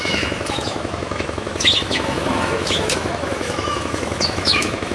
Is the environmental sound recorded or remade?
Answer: remade